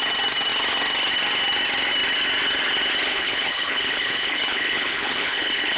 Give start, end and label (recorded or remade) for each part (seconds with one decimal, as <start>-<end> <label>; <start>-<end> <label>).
0.0-3.1 recorded; 3.1-5.8 remade